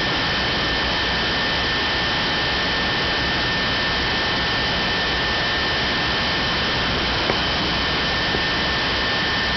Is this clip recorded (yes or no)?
yes